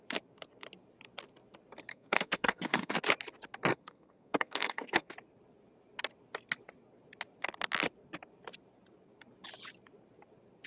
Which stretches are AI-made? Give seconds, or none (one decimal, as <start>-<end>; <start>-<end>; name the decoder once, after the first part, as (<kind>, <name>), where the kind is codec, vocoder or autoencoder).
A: 1.9-3.0 (codec, SNAC); 3.7-5.1